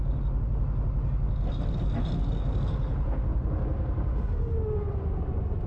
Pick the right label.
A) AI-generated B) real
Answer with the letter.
B